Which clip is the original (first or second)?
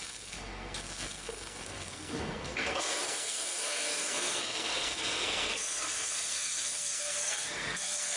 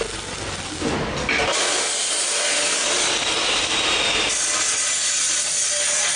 second